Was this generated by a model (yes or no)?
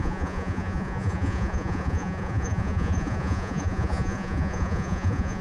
yes